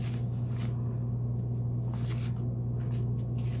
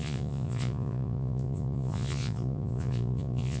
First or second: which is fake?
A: second